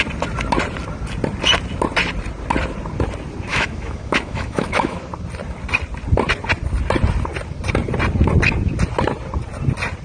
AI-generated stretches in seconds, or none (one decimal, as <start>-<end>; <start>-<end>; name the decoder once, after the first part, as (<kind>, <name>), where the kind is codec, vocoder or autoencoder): 3.5-5.1 (autoencoder, DAC-VAE)